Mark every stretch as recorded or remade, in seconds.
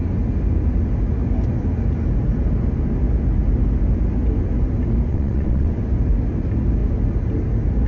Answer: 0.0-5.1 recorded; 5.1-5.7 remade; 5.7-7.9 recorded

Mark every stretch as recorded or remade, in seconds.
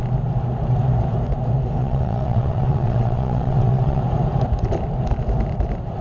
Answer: 0.0-1.8 recorded; 1.8-4.0 remade; 4.0-6.0 recorded